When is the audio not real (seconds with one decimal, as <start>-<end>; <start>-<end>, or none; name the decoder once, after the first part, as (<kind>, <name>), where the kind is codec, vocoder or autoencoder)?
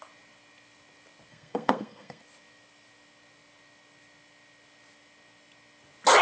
1.3-2.2 (codec, SNAC)